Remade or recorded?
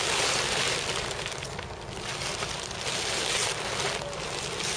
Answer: recorded